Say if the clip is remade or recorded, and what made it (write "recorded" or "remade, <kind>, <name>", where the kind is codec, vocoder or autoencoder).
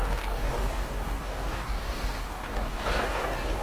remade, codec, DAC